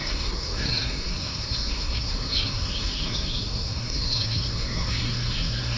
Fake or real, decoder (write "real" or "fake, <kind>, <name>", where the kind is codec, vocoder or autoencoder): fake, codec, SNAC